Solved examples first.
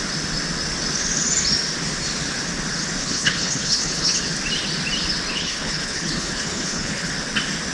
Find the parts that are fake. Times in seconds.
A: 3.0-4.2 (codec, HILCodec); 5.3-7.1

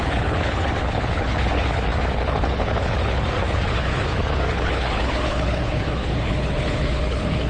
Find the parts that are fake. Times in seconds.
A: 0.0-7.5 (codec, HILCodec)

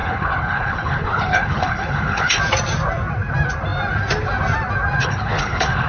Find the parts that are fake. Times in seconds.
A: 0.0-2.4 (codec, HILCodec); 5.0-5.9

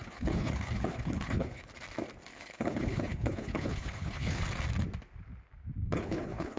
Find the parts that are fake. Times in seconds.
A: 0.0-1.7 (codec, HILCodec); 2.3-4.4; 5.8-6.6

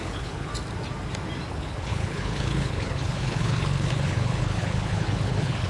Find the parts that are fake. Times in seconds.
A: 0.0-0.5 (codec, HILCodec); 1.5-5.7

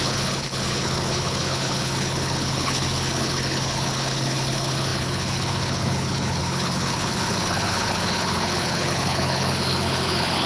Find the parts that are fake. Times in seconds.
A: 0.0-10.5 (codec, HILCodec)

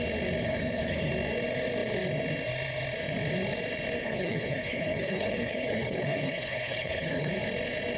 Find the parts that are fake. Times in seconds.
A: 0.4-1.1 (codec, HILCodec); 4.0-7.3